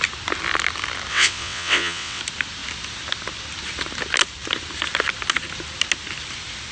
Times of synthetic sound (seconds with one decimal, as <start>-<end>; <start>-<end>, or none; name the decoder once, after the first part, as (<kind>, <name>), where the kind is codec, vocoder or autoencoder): 1.1-2.2 (vocoder, WaveNeXt)

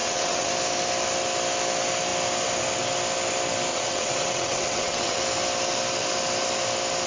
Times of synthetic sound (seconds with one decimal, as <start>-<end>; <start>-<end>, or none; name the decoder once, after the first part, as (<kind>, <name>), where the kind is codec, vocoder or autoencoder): 0.0-0.5 (vocoder, WaveNeXt); 3.7-5.2